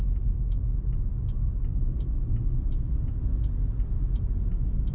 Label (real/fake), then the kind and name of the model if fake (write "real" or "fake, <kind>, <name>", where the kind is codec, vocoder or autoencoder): real